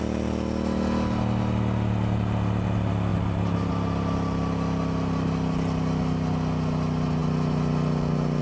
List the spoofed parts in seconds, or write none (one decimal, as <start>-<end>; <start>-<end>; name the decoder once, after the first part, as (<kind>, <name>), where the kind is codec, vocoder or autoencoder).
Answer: 3.1-3.7 (vocoder, BigVGAN v2)